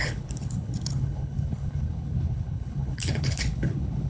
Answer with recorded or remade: remade